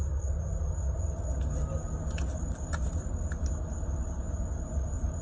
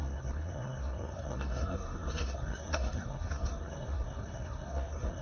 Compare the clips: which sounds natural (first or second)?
first